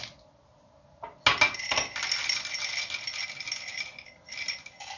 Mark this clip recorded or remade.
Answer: recorded